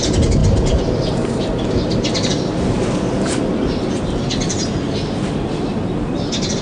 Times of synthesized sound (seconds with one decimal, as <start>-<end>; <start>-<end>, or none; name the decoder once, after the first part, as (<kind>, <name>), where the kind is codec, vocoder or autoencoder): none